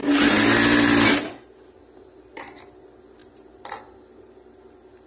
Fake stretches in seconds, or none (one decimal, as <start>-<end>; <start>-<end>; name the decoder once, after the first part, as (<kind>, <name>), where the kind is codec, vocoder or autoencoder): none